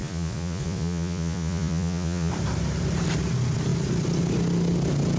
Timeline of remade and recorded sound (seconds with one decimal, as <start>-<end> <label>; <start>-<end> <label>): 0.0-2.3 remade; 2.3-5.2 recorded